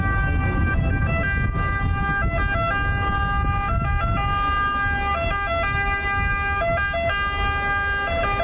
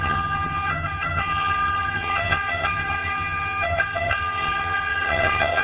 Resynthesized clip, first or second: second